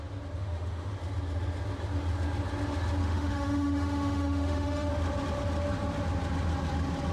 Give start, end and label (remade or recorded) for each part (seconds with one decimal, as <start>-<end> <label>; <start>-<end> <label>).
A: 0.0-0.4 recorded; 0.4-0.9 remade; 0.9-3.0 recorded; 3.0-4.9 remade; 4.9-7.1 recorded